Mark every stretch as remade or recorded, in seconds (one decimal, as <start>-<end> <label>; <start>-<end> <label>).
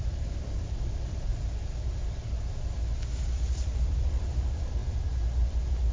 0.0-1.3 remade; 1.3-3.2 recorded; 3.2-5.9 remade